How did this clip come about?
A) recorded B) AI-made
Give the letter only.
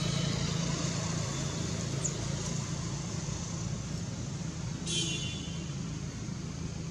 A